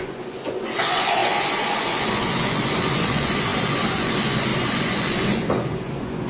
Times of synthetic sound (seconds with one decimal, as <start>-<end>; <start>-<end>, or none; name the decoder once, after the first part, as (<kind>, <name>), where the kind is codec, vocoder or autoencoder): 0.0-6.3 (vocoder, Vocos)